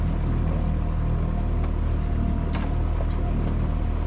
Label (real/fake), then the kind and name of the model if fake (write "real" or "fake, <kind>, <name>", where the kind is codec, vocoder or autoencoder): real